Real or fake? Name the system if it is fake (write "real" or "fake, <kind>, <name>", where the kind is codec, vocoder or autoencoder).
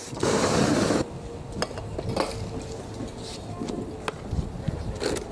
real